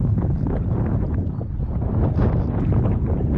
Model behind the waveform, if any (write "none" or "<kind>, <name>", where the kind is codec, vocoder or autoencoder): none